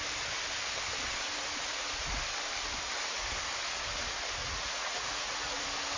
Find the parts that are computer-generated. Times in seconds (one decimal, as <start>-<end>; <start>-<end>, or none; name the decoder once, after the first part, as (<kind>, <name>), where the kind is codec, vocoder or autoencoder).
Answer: 4.4-5.6 (vocoder, Vocos)